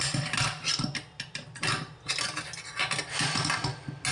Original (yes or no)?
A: yes